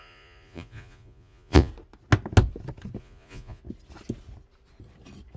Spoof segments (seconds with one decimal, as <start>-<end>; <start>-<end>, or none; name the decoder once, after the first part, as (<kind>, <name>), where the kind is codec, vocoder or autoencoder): 0.0-1.7 (vocoder, Vocos); 3.0-3.6